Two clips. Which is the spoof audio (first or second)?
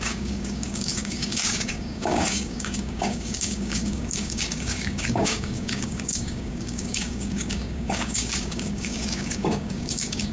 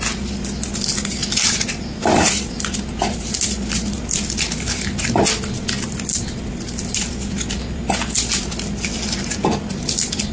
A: first